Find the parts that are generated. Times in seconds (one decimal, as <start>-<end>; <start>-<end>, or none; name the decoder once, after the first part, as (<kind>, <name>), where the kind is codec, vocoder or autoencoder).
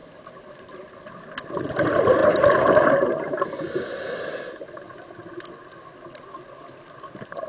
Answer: none